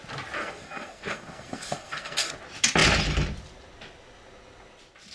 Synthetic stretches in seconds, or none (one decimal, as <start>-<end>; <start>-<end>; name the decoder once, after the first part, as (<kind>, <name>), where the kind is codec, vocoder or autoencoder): 0.4-2.3 (codec, SNAC)